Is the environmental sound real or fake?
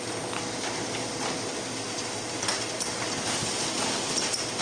real